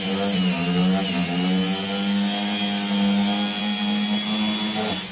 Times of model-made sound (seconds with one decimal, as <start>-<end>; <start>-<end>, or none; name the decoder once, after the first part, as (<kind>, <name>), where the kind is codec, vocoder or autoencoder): none